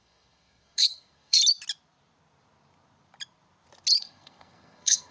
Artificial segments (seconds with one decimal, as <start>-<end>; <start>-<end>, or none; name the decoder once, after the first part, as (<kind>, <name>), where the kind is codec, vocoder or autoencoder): 0.0-1.4 (codec, SNAC); 4.0-5.1

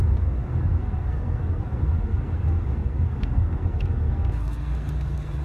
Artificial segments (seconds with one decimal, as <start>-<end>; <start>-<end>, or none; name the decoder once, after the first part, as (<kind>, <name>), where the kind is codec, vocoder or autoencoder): 0.0-5.4 (codec, SNAC)

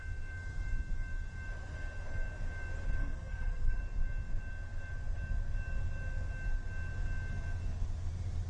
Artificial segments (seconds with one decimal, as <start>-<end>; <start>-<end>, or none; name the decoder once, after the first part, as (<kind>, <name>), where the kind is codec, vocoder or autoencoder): 3.0-3.8 (codec, SNAC)

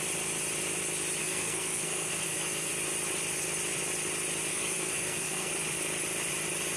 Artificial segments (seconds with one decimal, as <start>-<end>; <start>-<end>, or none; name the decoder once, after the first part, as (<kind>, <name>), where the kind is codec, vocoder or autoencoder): 1.2-2.7 (codec, SNAC); 4.5-5.5

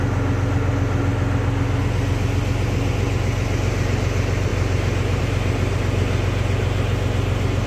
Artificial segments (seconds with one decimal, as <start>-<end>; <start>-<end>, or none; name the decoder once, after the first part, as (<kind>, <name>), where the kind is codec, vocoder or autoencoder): none

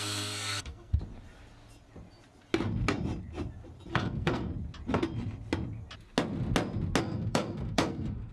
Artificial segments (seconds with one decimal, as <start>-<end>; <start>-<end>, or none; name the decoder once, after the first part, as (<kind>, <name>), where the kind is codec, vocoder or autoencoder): 0.0-0.9 (codec, SNAC); 3.9-4.5; 7.0-8.3